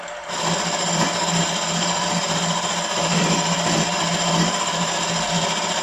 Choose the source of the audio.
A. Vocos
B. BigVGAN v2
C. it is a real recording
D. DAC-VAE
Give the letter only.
B